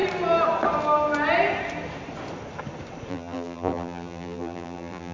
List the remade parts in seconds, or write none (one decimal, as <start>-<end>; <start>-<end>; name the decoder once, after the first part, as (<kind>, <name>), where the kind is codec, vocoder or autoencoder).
3.1-5.1 (vocoder, BigVGAN v2)